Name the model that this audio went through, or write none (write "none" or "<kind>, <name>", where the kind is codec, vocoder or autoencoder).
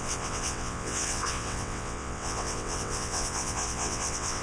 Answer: vocoder, WaveNeXt